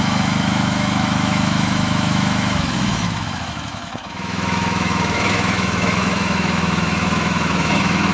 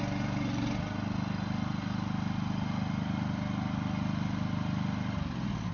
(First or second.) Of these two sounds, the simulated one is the first